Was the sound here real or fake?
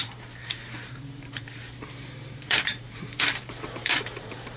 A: fake